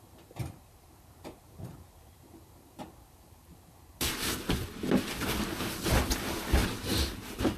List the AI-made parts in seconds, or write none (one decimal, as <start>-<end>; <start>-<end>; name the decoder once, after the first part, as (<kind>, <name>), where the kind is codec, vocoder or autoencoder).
0.4-4.4 (vocoder, BigVGAN v2); 6.6-7.6